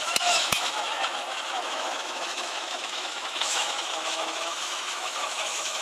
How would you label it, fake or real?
fake